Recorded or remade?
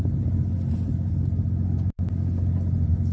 recorded